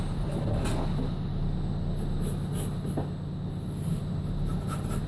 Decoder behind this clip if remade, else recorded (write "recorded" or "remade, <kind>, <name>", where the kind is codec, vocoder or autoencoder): recorded